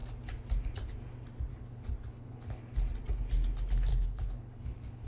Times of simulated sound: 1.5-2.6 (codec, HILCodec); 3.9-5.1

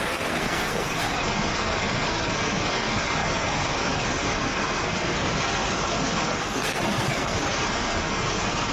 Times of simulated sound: 0.0-8.7 (codec, SNAC)